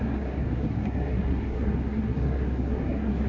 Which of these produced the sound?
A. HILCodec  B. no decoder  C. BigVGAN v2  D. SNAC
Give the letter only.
D